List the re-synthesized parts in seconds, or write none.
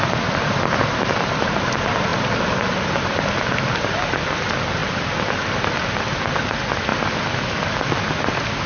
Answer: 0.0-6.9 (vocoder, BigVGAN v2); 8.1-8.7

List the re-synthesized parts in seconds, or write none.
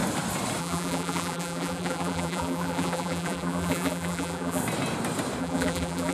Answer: 0.6-4.6 (vocoder, BigVGAN v2); 5.4-6.1